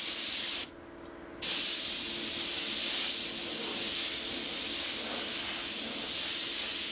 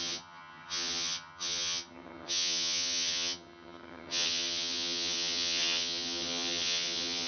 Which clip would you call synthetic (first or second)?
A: second